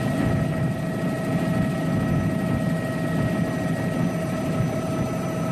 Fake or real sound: real